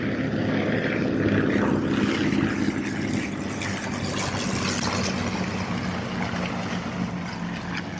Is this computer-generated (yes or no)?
no